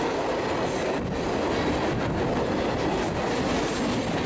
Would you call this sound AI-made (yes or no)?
no